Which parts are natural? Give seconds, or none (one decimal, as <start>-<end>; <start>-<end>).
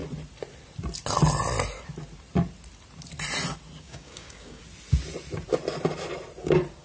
0.0-3.8; 4.6-6.8